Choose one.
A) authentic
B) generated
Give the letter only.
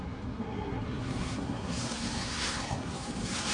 B